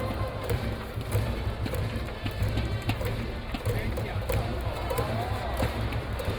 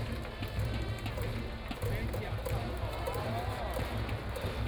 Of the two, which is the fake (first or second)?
first